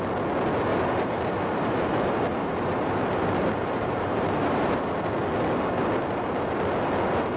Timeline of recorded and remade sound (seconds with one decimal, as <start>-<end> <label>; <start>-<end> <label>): 0.0-0.7 recorded; 0.7-4.8 remade; 4.8-7.4 recorded